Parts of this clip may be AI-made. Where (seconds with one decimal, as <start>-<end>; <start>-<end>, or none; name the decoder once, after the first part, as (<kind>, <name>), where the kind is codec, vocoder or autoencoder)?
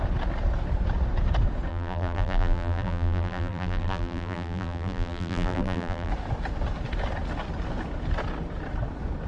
1.7-6.1 (vocoder, BigVGAN v2)